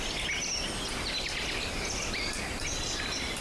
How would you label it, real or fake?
real